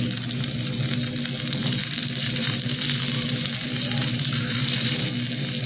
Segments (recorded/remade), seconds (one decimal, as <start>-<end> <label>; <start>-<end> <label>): 0.0-1.6 recorded; 1.6-5.0 remade; 5.0-5.7 recorded